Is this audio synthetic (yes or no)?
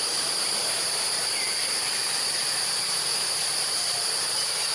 yes